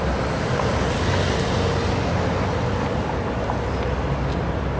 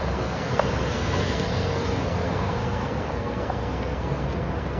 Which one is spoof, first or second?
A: second